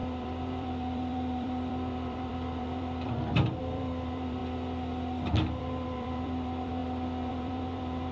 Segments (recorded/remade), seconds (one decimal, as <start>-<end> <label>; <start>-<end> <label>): 0.0-4.4 remade; 4.4-5.6 recorded; 5.6-6.8 remade; 6.8-7.3 recorded; 7.3-8.1 remade